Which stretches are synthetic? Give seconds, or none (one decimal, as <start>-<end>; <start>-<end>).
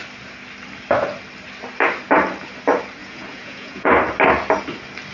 3.0-3.9